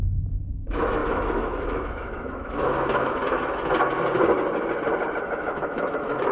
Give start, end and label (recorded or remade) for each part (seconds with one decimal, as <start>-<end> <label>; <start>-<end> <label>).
0.0-3.2 remade; 3.2-5.1 recorded; 5.1-6.3 remade